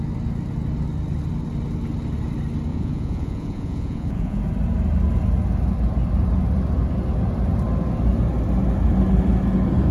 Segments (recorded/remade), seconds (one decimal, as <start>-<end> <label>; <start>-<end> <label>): 0.0-2.7 recorded; 2.7-4.4 remade; 4.4-9.9 recorded